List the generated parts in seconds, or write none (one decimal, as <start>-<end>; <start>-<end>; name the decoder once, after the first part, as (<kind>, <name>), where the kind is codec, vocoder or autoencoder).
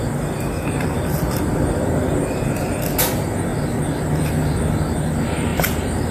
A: 5.5-6.1 (vocoder, BigVGAN v2)